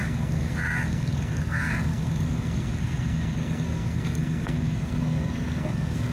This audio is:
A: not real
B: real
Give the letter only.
A